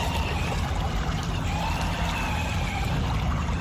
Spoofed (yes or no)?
no